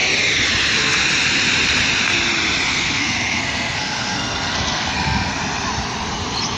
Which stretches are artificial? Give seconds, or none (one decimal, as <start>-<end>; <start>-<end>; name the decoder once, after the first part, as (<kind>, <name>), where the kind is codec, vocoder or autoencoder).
2.7-5.4 (codec, SNAC)